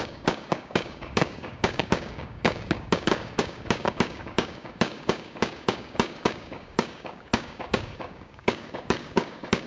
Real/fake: fake